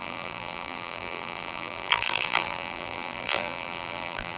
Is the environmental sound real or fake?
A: fake